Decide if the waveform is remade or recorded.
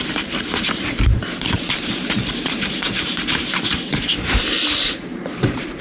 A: remade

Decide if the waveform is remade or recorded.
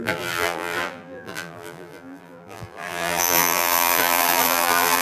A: remade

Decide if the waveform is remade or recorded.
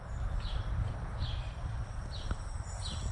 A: remade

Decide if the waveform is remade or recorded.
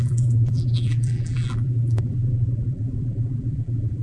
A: remade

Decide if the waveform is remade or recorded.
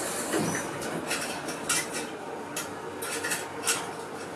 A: recorded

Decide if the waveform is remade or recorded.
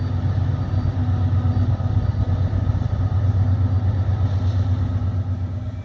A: recorded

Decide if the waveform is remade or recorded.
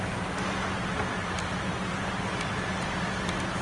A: recorded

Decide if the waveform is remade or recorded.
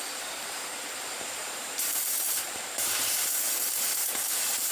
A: remade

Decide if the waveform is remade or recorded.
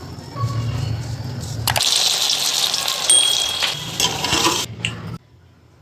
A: recorded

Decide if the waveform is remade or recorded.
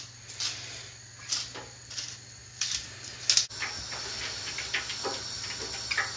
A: recorded